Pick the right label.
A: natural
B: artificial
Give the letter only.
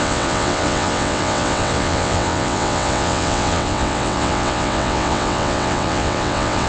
B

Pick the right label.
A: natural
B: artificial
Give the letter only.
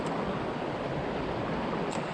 A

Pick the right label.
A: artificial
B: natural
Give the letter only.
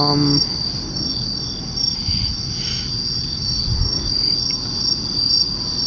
B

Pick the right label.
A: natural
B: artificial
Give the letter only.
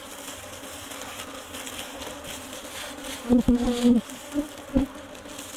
A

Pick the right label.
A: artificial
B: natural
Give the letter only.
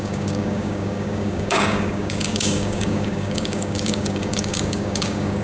A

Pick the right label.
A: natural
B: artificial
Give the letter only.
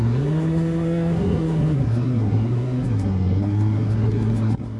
B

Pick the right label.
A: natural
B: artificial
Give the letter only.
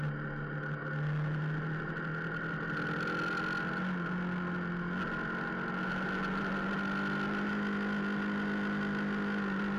A